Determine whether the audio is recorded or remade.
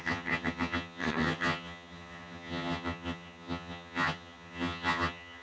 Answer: remade